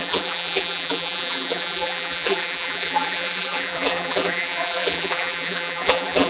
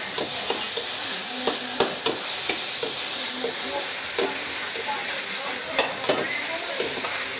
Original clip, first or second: second